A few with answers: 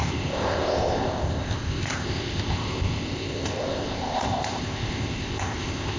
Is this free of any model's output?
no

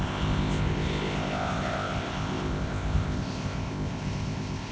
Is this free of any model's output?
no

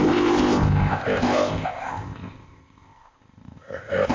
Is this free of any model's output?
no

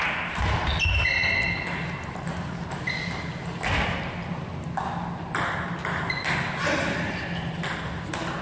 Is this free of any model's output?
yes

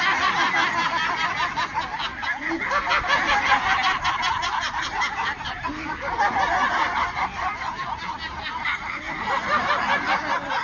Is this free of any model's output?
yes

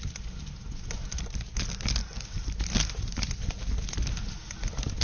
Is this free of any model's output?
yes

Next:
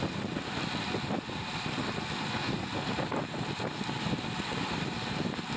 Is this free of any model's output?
yes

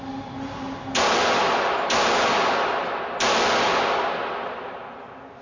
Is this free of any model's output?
yes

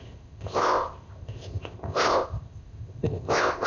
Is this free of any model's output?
no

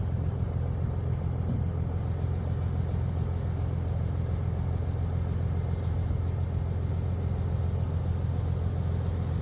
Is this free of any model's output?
yes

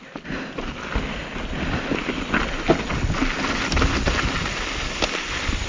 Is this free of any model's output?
yes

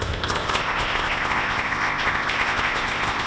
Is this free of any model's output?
no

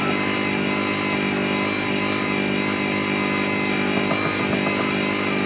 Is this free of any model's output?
yes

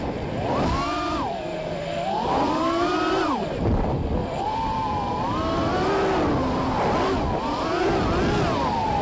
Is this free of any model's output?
yes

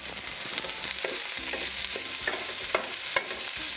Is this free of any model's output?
yes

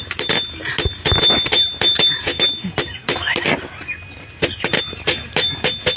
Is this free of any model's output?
yes